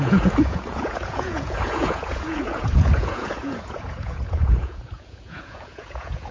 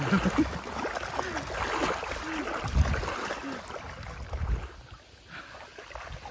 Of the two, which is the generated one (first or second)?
first